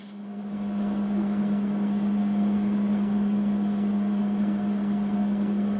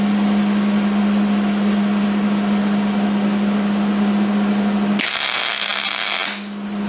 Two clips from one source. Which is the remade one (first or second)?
first